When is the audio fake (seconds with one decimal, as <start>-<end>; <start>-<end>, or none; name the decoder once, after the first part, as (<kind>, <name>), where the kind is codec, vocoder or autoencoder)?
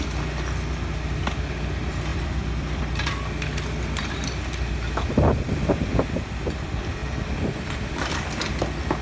2.1-2.8 (vocoder, BigVGAN v2); 7.0-8.5